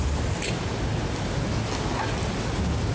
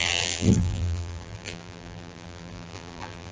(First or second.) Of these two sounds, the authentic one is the first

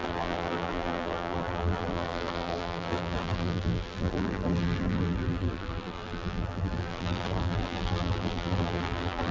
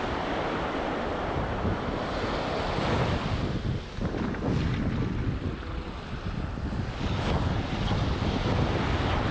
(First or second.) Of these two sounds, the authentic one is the second